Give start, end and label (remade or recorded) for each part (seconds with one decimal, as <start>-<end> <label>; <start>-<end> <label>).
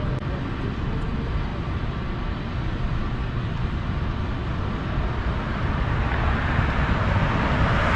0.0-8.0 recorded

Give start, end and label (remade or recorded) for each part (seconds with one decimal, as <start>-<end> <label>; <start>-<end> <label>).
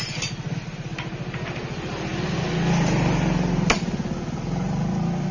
0.0-5.3 recorded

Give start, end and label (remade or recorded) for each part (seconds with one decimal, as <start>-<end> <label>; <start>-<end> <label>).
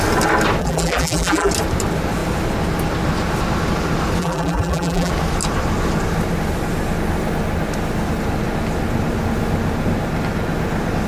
0.0-0.6 recorded; 0.6-1.5 remade; 1.5-4.2 recorded; 4.2-5.1 remade; 5.1-11.1 recorded